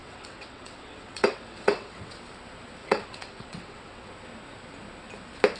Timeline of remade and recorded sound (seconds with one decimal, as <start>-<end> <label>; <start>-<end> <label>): 0.0-2.1 remade; 2.1-2.8 recorded; 2.8-4.1 remade; 4.1-5.6 recorded